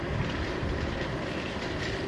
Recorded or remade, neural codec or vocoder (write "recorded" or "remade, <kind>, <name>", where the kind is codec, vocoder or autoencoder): remade, vocoder, BigVGAN v2